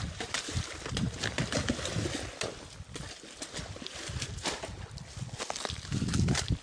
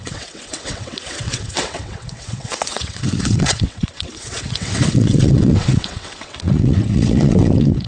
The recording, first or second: first